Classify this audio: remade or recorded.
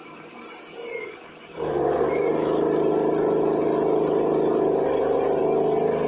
recorded